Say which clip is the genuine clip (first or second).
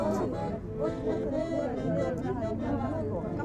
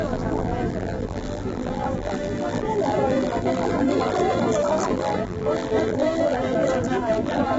first